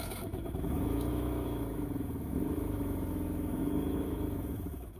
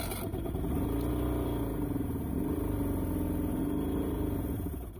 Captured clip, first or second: second